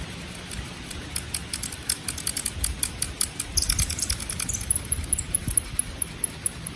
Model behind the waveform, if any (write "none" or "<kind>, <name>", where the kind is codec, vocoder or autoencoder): none